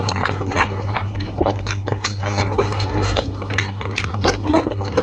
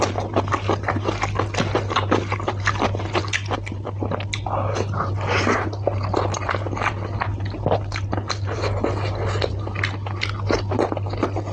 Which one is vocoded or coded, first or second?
first